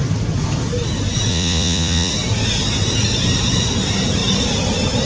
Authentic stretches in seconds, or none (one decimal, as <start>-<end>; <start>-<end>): 0.0-1.3; 2.1-5.1